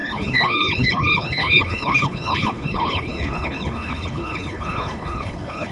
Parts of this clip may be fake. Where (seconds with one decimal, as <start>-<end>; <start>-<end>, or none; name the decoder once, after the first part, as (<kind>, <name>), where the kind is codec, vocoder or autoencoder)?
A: 0.0-5.7 (codec, HILCodec)